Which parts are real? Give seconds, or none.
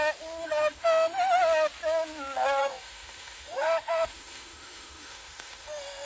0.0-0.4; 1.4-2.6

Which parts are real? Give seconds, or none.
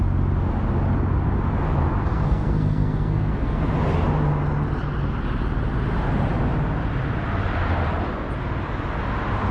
0.0-2.0; 3.7-9.5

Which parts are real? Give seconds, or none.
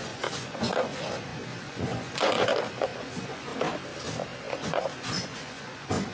3.5-4.5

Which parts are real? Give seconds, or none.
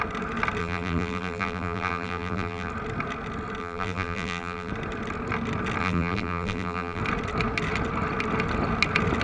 0.0-0.6; 2.7-3.6; 4.7-5.8; 7.0-9.2